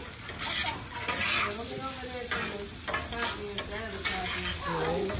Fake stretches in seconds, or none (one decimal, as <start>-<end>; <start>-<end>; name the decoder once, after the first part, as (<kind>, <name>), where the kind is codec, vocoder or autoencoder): none

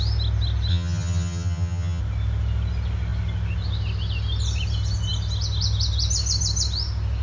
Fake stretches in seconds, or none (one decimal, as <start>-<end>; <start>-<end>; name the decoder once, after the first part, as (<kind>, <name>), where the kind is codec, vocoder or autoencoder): 0.7-2.0 (vocoder, HiFi-GAN)

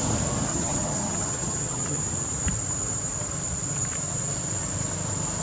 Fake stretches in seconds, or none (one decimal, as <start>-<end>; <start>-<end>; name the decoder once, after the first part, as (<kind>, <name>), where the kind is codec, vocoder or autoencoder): 0.5-2.0 (vocoder, HiFi-GAN)

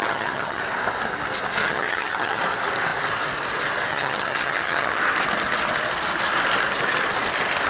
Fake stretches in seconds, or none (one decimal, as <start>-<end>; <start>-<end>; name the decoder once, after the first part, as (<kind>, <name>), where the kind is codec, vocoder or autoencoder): 0.0-0.6 (vocoder, HiFi-GAN); 1.6-2.4; 3.9-5.0

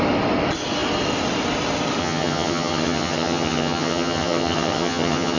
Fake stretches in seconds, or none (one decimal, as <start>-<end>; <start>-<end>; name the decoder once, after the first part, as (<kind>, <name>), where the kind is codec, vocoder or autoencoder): 2.0-5.4 (vocoder, HiFi-GAN)

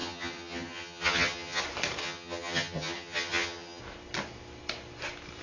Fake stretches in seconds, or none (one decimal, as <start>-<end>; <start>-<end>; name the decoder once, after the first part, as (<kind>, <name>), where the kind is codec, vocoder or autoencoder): 0.0-1.6 (vocoder, HiFi-GAN); 2.0-3.8

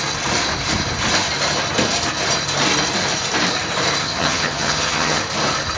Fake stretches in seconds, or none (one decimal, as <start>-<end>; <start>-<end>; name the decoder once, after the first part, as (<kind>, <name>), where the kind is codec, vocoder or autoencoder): 4.0-5.2 (vocoder, HiFi-GAN)